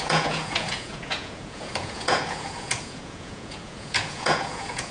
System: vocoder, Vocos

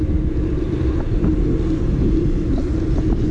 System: none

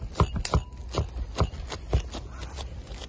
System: none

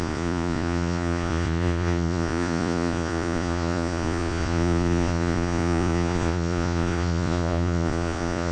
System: vocoder, Vocos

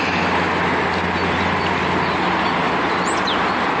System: none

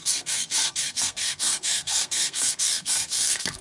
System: codec, SNAC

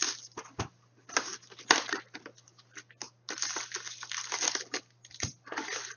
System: none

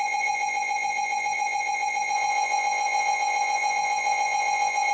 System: vocoder, Vocos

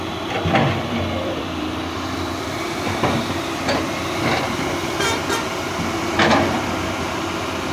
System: vocoder, BigVGAN v2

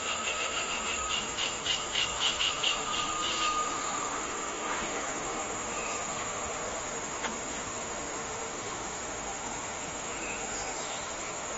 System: autoencoder, DAC-VAE